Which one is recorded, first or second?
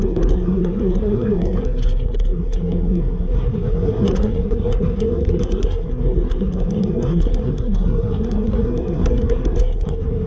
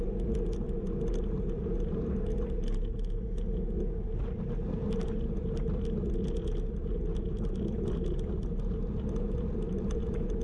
second